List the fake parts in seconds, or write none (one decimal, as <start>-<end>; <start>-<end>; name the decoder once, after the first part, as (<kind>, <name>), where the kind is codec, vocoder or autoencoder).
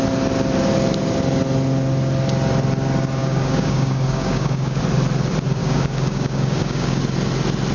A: 3.2-4.8 (codec, DAC); 5.6-7.0